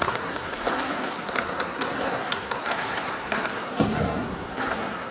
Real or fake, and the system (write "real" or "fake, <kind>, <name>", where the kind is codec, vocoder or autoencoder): fake, codec, SNAC